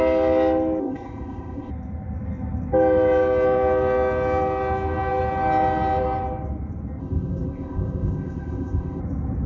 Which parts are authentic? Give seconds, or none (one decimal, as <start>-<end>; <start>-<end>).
0.0-0.8; 1.7-7.0; 9.0-9.5